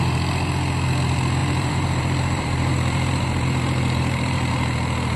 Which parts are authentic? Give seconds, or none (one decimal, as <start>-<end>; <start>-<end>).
0.0-1.4; 4.5-5.2